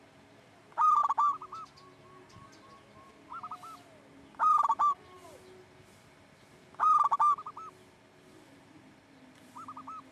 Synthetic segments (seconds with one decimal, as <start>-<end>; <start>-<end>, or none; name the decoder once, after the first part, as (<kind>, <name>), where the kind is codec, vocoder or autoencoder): none